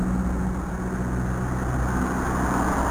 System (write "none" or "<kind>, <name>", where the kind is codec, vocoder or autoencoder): none